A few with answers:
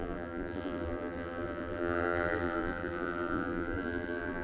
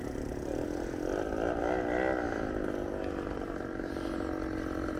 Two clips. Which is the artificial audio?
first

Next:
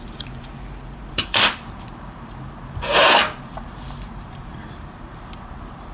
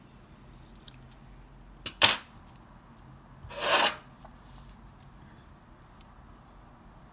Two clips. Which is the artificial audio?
first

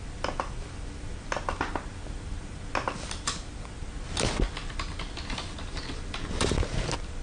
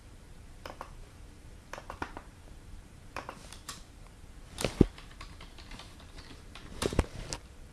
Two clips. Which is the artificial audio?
second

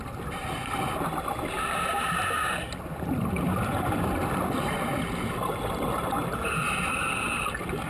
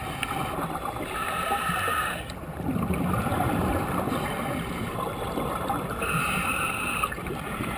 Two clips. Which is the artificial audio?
second